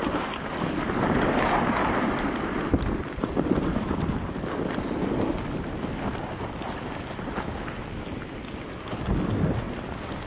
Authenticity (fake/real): real